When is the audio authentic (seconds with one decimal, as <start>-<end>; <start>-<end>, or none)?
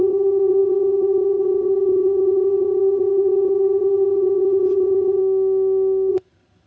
5.2-6.1